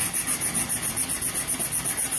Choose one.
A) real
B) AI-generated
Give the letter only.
A